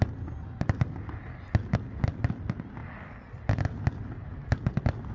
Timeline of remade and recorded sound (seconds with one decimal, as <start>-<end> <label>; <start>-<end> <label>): 0.0-5.1 recorded